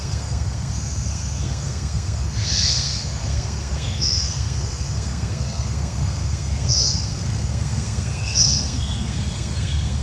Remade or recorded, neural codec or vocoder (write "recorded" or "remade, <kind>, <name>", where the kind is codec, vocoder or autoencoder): remade, codec, SNAC